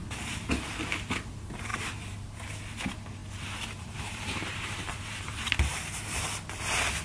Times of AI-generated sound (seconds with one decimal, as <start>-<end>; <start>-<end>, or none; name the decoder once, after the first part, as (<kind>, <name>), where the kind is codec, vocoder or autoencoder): 0.0-0.5 (vocoder, BigVGAN v2); 1.7-2.5; 3.2-6.2